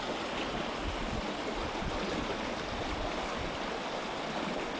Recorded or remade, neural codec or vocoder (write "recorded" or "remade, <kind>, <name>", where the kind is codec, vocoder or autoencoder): recorded